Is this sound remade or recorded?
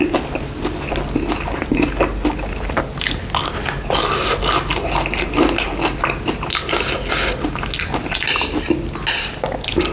recorded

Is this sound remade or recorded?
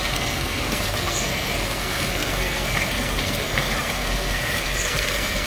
remade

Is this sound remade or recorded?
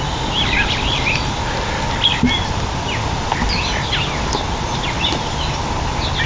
recorded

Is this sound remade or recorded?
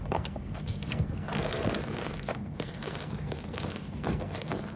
remade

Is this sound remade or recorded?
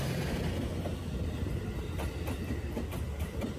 recorded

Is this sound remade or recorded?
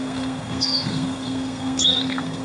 remade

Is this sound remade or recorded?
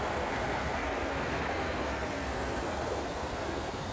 remade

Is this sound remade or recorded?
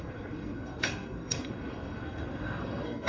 remade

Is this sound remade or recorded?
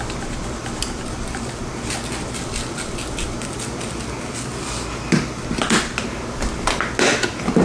recorded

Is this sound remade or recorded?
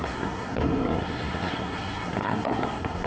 remade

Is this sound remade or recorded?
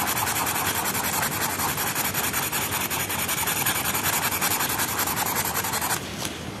recorded